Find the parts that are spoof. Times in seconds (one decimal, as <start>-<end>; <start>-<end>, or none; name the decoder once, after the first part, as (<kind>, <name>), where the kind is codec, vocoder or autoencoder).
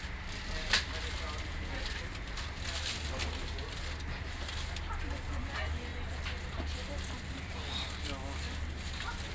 none